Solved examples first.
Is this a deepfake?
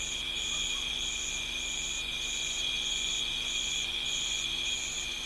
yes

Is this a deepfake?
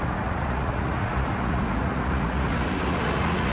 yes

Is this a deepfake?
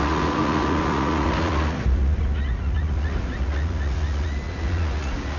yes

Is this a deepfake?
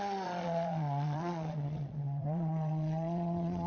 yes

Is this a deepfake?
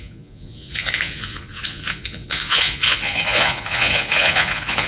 yes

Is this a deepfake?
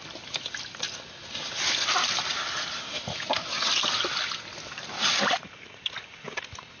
no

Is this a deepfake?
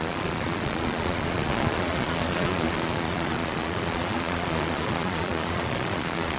yes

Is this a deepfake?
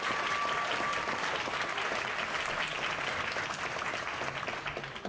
no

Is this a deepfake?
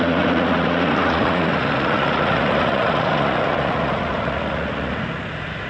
yes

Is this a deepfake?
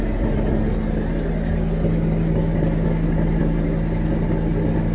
no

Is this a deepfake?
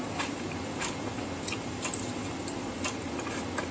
no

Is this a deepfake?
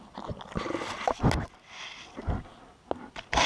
no